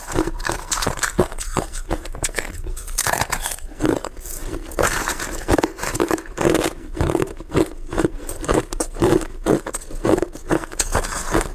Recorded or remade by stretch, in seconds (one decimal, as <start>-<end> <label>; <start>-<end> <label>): 0.0-11.5 remade